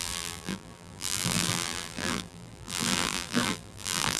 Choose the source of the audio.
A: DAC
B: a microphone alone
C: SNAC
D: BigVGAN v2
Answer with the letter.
D